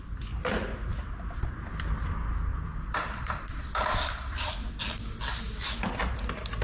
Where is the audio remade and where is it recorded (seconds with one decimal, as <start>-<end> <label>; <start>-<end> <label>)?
0.0-2.5 recorded; 2.5-4.8 remade; 4.8-6.6 recorded